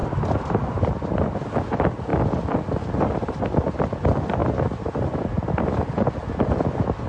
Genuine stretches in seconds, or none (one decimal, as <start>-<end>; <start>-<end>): 0.0-7.1